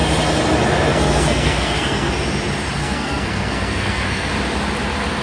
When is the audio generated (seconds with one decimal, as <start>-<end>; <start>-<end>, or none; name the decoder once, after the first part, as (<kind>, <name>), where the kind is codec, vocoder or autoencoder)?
0.9-2.1 (codec, SNAC); 2.8-4.3